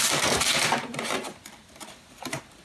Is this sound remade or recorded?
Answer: recorded